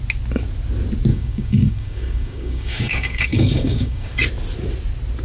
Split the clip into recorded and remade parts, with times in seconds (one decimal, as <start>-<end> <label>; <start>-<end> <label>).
0.0-1.1 recorded; 1.1-4.2 remade; 4.2-5.2 recorded